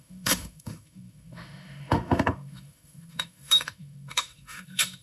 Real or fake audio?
fake